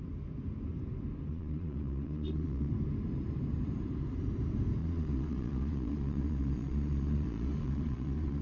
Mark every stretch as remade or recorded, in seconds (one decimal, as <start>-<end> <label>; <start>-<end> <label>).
0.0-1.3 recorded; 1.3-2.7 remade; 2.7-4.8 recorded; 4.8-8.4 remade